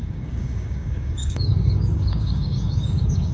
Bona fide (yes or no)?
no